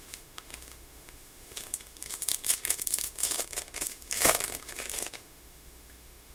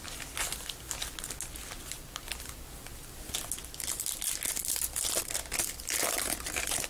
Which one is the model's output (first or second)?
first